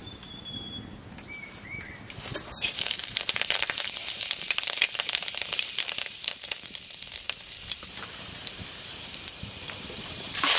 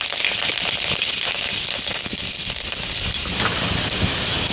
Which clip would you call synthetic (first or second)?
first